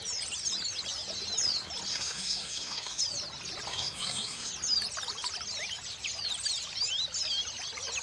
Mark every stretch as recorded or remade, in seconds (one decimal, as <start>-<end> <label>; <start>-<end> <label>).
0.0-1.9 recorded; 1.9-3.0 remade; 3.0-3.7 recorded; 3.7-4.5 remade; 4.5-8.0 recorded

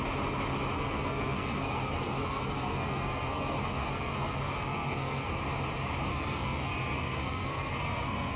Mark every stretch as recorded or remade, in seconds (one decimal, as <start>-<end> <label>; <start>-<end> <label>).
0.0-0.7 recorded; 0.7-5.4 remade; 5.4-6.1 recorded; 6.1-8.4 remade

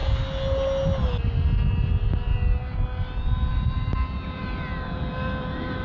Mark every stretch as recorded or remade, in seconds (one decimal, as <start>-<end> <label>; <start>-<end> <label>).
0.0-5.8 recorded

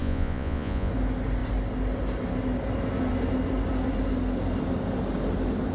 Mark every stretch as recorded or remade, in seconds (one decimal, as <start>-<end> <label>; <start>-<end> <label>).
0.0-0.9 remade; 0.9-5.7 recorded

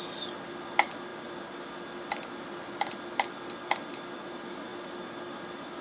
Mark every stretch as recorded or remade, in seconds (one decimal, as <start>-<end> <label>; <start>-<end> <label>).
0.0-5.8 recorded

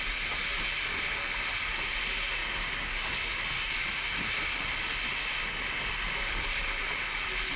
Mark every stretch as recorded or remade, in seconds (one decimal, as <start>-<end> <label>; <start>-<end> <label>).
0.0-2.4 recorded; 2.4-4.2 remade; 4.2-7.6 recorded

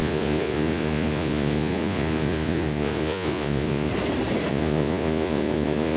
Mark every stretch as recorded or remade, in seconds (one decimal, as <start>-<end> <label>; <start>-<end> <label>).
0.0-3.9 remade; 3.9-4.5 recorded; 4.5-6.0 remade